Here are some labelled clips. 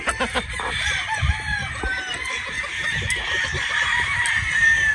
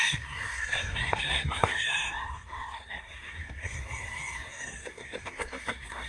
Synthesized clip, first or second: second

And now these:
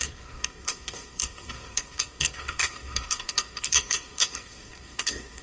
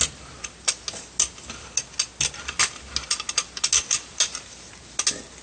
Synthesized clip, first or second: first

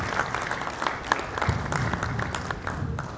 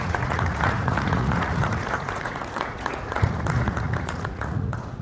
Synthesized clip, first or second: second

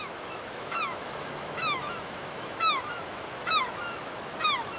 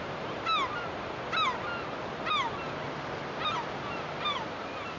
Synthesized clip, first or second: first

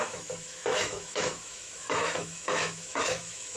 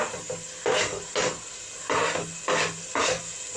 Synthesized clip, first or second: first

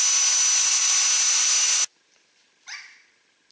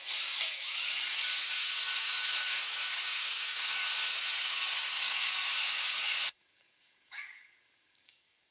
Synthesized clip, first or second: second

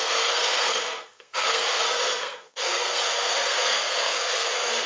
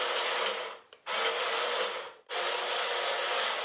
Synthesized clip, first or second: first